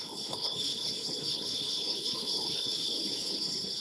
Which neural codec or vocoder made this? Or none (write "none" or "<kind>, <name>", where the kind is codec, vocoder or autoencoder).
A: codec, HILCodec